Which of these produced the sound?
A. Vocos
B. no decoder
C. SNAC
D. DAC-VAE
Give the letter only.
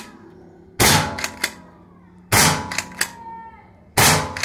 B